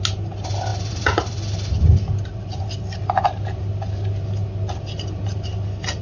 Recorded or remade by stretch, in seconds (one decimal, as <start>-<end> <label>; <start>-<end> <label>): 0.0-0.7 recorded; 0.7-2.6 remade; 2.6-6.0 recorded